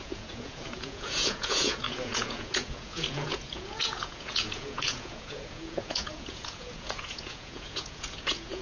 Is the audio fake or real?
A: fake